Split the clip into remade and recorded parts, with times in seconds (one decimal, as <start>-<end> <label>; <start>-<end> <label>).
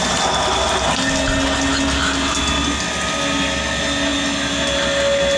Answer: 0.0-5.4 recorded